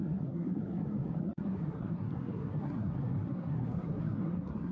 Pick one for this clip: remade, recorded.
remade